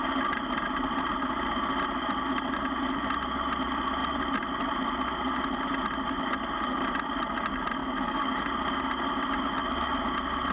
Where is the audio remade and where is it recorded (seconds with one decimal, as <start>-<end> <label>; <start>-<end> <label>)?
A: 0.0-7.8 recorded; 7.8-8.4 remade; 8.4-10.5 recorded